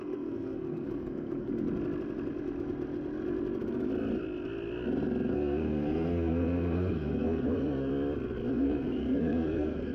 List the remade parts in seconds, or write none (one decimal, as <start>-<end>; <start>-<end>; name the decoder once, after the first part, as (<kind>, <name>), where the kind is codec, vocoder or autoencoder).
0.0-1.5 (codec, SNAC); 5.3-7.9; 8.5-9.9